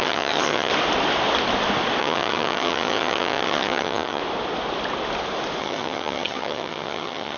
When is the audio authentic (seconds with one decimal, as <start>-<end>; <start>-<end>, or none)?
0.7-2.0; 4.2-5.6